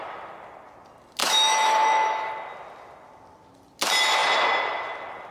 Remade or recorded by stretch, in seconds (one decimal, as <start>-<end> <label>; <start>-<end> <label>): 0.0-1.2 recorded; 1.2-2.3 remade; 2.3-5.3 recorded